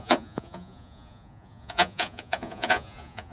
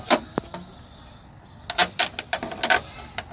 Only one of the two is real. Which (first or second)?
second